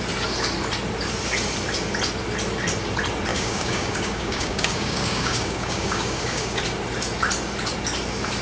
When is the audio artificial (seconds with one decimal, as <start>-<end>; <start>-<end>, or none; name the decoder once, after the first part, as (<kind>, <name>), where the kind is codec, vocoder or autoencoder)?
3.3-6.6 (codec, DAC)